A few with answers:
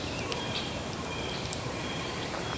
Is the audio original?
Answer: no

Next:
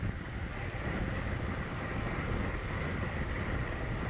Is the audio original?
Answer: yes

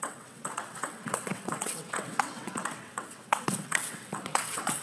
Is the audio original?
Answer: no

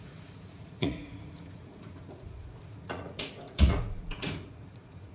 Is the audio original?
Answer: no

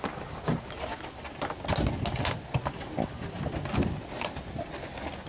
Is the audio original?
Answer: yes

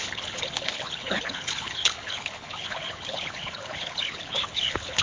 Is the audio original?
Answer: no